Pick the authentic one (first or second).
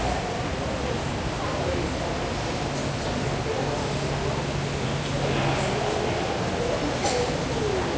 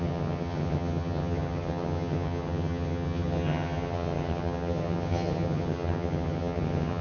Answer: first